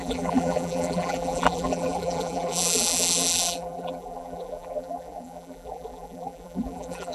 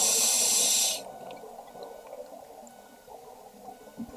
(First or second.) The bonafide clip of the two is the second